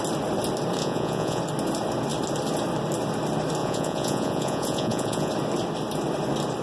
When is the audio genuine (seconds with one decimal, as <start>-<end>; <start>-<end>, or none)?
0.0-0.8; 1.4-3.6; 5.3-6.6